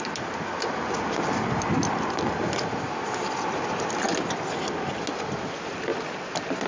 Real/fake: real